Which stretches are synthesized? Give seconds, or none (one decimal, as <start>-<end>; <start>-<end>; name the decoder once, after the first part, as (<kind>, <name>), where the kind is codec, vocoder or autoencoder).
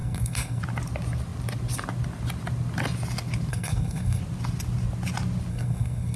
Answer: 0.0-0.6 (codec, SNAC); 3.5-4.2; 5.5-6.2